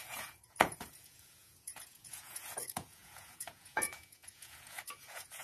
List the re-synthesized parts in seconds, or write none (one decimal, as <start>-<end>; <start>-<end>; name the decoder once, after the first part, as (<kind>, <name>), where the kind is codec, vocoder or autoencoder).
0.0-5.4 (vocoder, Vocos)